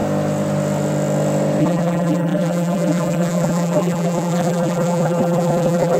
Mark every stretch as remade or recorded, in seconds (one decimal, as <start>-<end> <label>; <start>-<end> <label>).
0.0-1.6 recorded; 1.6-6.0 remade